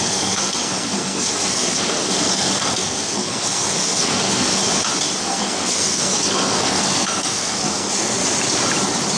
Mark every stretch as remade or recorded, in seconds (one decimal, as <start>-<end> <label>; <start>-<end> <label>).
0.0-4.6 remade; 4.6-5.2 recorded; 5.2-8.2 remade; 8.2-9.2 recorded